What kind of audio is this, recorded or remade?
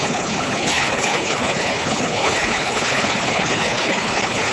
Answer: remade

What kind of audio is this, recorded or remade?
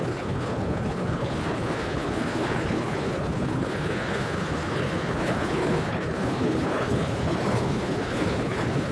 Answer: remade